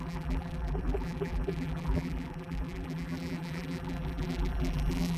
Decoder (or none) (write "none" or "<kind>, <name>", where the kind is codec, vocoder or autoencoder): vocoder, BigVGAN v2